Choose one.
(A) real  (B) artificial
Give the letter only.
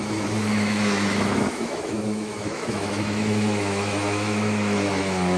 B